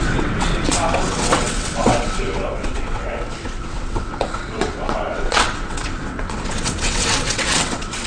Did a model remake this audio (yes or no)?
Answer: yes